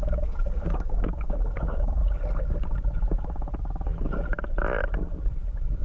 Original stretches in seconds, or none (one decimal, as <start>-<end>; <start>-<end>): 2.0-5.8

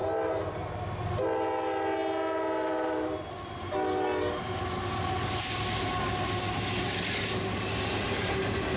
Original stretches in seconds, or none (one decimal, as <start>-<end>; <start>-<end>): 0.0-8.8

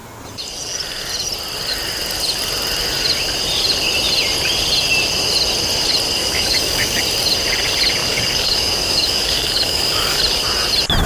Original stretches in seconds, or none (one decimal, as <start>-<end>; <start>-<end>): 0.0-6.2; 7.0-8.0; 10.2-11.1

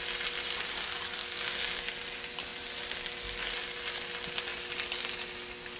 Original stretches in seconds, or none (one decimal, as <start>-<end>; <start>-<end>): 0.0-1.2; 1.9-5.8

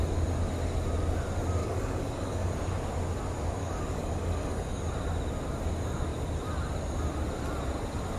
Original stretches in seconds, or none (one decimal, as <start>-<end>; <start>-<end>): 0.0-1.6; 2.5-3.6; 4.8-8.2

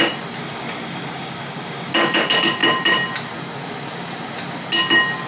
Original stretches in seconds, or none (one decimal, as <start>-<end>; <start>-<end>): 0.0-0.4; 1.9-5.3